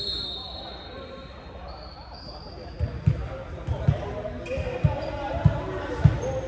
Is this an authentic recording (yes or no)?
yes